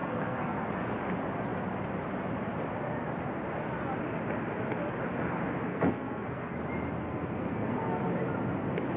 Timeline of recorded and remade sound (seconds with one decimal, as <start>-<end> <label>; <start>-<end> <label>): 0.0-0.7 remade; 0.7-5.7 recorded; 5.7-6.6 remade; 6.6-7.0 recorded; 7.0-7.9 remade; 7.9-9.0 recorded